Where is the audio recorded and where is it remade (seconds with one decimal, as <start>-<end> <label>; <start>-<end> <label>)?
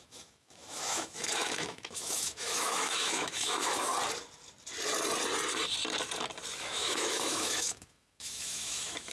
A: 0.0-3.9 remade; 3.9-6.6 recorded; 6.6-9.1 remade